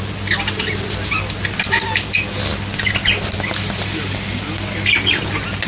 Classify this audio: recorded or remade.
recorded